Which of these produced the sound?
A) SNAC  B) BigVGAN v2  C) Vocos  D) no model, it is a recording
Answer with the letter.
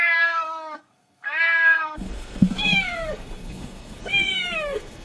A